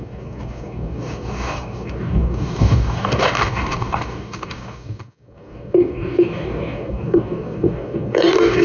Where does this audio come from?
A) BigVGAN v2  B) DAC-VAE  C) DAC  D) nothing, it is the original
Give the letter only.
C